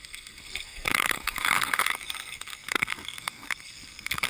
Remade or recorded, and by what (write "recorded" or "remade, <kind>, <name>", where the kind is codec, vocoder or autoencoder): remade, codec, SNAC